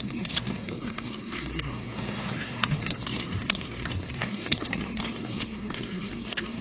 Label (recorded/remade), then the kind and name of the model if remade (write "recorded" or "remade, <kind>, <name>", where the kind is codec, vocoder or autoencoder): remade, codec, SNAC